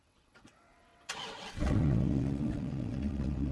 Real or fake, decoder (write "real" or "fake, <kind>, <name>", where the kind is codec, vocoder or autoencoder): fake, vocoder, WaveNeXt